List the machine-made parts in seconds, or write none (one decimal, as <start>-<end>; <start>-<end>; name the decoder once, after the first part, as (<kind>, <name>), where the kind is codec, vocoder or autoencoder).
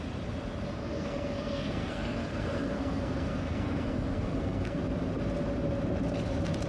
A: 0.8-4.8 (codec, SNAC)